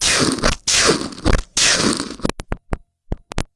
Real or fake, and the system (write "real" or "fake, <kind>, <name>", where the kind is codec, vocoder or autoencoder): real